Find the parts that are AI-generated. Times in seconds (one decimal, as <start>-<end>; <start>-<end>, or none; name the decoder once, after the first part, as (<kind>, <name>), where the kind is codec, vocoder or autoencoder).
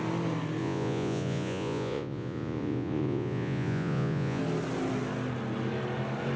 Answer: 0.6-4.4 (vocoder, Vocos)